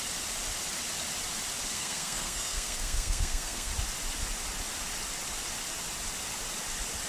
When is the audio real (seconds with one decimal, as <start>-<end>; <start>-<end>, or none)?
0.0-1.7; 3.7-7.1